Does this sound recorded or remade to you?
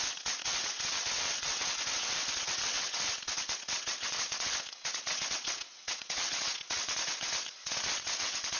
remade